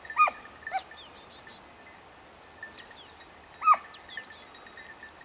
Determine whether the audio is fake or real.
real